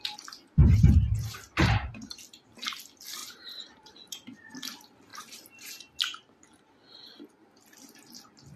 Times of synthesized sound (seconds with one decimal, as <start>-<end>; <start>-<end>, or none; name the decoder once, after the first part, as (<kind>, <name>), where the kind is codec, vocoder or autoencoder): 0.6-1.9 (vocoder, BigVGAN v2); 3.2-3.9; 5.1-5.7